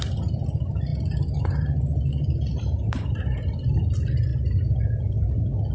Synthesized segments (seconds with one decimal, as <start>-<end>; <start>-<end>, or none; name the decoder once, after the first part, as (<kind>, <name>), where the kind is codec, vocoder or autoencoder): 0.0-0.9 (vocoder, BigVGAN v2); 2.1-4.3; 4.8-5.7